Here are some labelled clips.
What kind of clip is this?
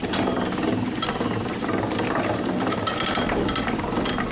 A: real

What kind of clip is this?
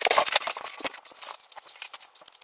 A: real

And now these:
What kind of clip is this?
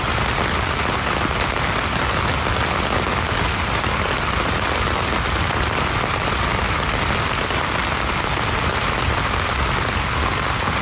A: real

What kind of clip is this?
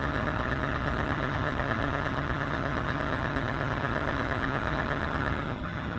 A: fake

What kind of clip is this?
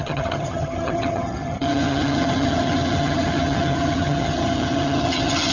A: fake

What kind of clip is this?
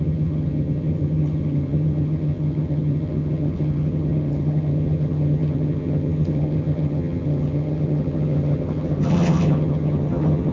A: fake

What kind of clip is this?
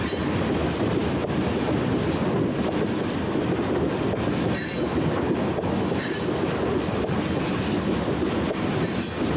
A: real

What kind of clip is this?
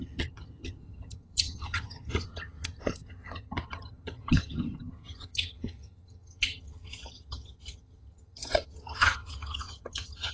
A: fake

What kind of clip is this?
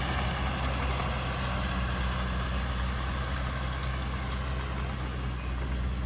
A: real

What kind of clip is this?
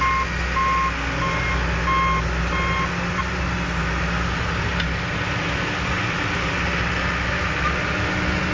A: real